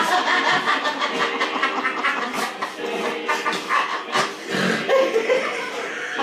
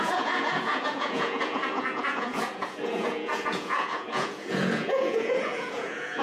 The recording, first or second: first